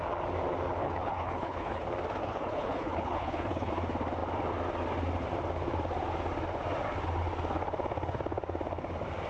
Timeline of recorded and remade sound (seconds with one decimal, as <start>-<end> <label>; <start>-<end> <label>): 0.0-0.8 recorded; 0.8-1.8 remade; 1.8-2.2 recorded; 2.2-3.7 remade; 3.7-9.3 recorded

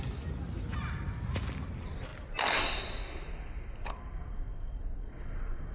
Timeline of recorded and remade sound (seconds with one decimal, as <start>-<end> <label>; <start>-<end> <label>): 0.0-2.1 recorded; 2.1-2.8 remade; 2.8-5.7 recorded

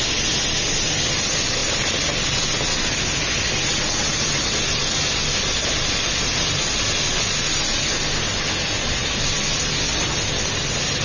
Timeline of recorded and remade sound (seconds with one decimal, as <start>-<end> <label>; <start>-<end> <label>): 0.0-11.0 recorded

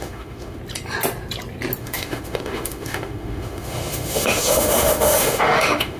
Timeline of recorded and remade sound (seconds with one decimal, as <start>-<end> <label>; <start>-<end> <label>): 0.0-0.6 remade; 0.6-1.8 recorded; 1.8-6.0 remade

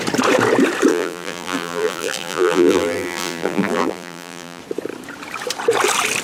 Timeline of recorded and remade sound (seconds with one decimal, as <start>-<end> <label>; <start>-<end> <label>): 0.0-0.9 recorded; 0.9-4.6 remade; 4.6-6.2 recorded

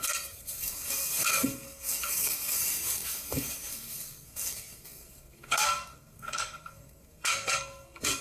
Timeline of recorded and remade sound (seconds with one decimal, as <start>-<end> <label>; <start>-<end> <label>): 0.0-8.2 remade

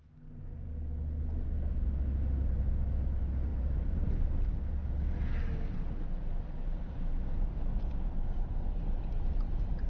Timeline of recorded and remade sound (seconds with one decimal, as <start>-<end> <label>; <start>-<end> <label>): 0.0-3.5 recorded; 3.5-5.0 remade; 5.0-9.9 recorded

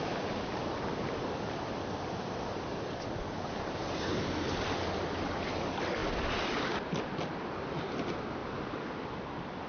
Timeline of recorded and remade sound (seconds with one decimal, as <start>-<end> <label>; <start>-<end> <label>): 0.0-3.8 remade; 3.8-5.1 recorded; 5.1-8.4 remade; 8.4-9.7 recorded